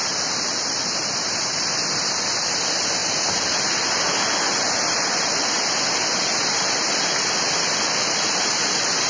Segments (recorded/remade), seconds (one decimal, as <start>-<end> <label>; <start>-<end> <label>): 0.0-9.1 recorded